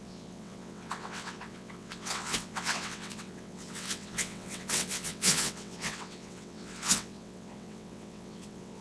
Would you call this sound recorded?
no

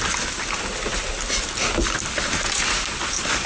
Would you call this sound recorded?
yes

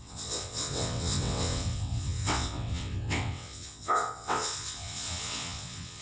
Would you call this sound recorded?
no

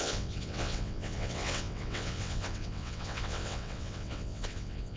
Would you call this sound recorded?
no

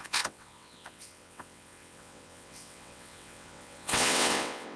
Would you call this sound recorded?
no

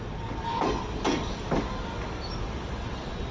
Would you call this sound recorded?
yes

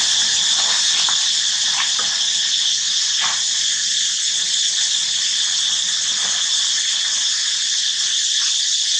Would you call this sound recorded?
yes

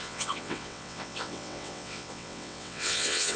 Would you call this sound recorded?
no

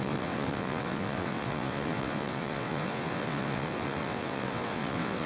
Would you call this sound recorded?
no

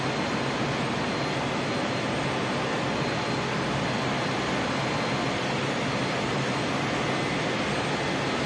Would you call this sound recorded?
yes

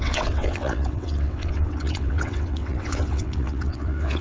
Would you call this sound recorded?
no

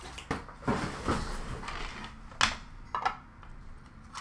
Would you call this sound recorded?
yes